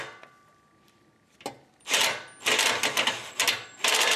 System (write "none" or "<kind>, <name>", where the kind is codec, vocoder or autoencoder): none